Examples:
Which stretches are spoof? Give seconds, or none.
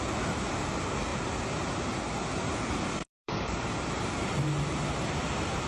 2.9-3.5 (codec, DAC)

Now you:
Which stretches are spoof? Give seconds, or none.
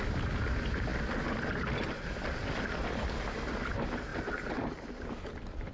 none